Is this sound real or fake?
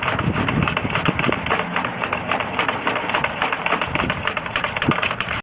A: fake